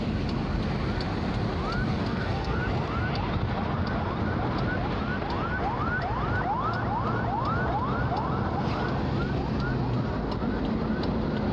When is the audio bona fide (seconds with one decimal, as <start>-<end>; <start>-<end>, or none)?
0.0-1.9; 2.6-11.5